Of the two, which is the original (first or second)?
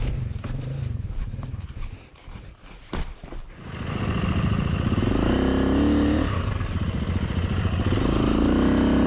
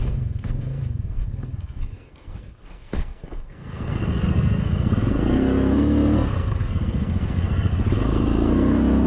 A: first